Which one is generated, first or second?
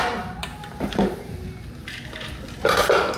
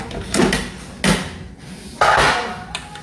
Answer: first